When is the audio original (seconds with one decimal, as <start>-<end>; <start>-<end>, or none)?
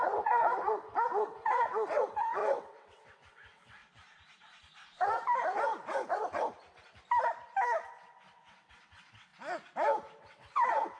3.8-7.9; 9.3-10.2